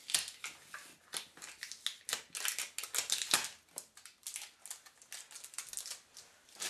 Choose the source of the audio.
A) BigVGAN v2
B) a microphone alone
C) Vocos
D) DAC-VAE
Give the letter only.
B